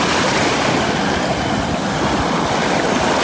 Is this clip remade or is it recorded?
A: recorded